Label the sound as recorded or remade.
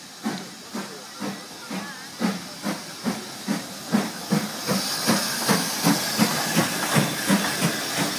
recorded